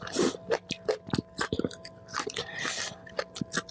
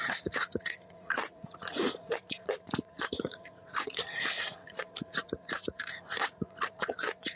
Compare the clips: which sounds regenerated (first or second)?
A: second